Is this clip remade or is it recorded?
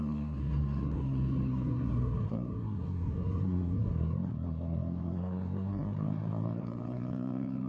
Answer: remade